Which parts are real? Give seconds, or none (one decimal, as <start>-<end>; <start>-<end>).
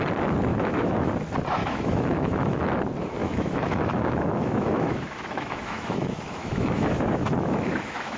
0.0-0.5; 1.1-1.6; 2.6-3.2